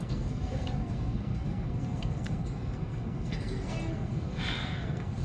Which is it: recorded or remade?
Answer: remade